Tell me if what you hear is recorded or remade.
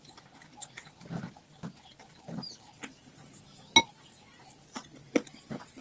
recorded